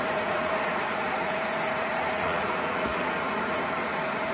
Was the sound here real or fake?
fake